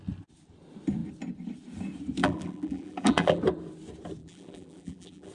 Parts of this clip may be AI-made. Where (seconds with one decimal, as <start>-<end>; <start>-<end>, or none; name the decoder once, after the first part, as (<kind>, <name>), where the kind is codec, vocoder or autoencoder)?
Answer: 2.2-3.4 (vocoder, BigVGAN v2); 4.2-5.3